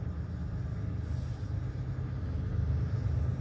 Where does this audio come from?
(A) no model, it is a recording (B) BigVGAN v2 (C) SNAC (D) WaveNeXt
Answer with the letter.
A